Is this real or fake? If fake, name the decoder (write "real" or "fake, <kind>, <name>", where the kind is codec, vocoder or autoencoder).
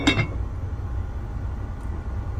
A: real